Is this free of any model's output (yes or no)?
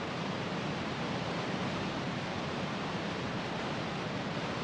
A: no